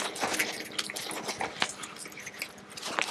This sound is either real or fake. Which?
real